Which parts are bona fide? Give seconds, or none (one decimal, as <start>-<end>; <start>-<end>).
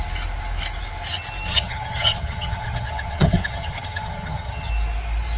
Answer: 0.0-1.5; 4.7-5.4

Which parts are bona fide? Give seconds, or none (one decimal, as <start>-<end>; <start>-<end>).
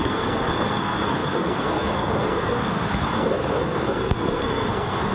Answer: none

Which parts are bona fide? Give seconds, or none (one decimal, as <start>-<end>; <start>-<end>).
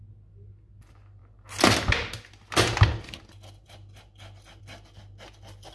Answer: 0.0-5.7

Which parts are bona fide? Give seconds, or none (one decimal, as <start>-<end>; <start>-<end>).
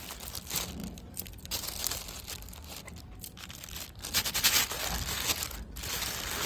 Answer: 0.0-0.8; 1.8-6.5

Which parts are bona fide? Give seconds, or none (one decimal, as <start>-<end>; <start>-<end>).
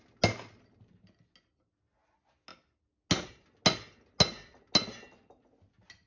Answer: 0.0-6.1